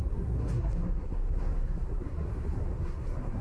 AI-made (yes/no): yes